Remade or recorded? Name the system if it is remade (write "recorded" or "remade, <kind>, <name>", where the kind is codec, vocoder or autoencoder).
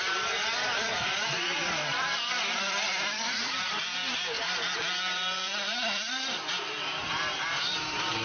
remade, vocoder, BigVGAN v2